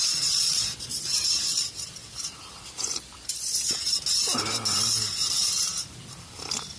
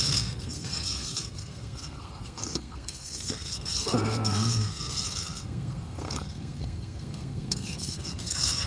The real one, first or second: first